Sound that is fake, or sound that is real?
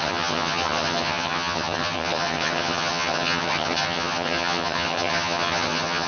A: fake